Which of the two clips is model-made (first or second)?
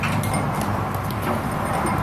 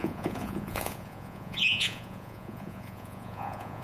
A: second